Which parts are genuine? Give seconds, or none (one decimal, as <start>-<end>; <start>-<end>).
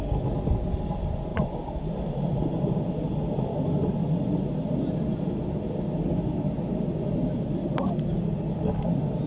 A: 0.0-9.3